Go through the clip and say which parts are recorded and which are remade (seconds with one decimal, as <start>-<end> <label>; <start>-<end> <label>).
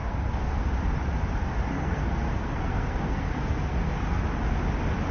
0.0-0.7 remade; 0.7-1.7 recorded; 1.7-4.2 remade; 4.2-5.1 recorded